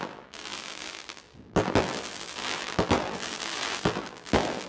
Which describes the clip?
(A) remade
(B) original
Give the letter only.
A